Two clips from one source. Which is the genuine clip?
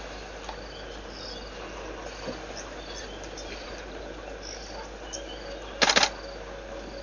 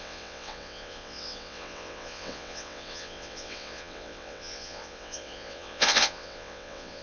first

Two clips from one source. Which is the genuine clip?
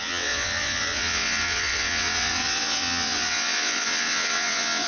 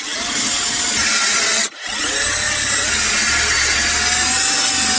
second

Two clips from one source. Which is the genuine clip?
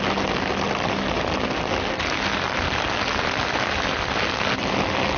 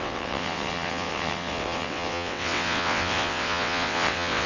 first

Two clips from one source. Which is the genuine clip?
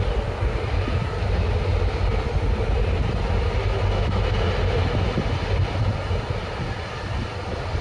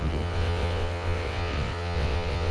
first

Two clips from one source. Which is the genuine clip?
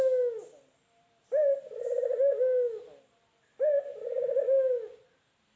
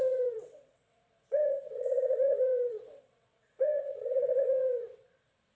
first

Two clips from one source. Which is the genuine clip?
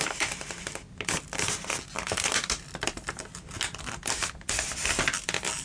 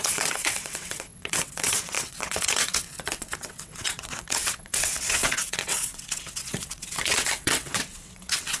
first